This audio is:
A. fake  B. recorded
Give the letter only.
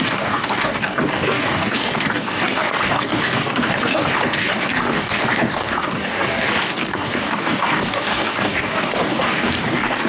A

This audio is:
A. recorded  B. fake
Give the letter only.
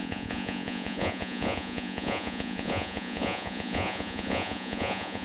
B